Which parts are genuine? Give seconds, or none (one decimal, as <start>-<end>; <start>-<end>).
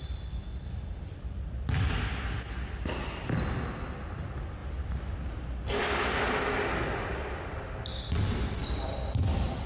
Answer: 0.0-0.5; 2.3-8.6; 9.2-9.7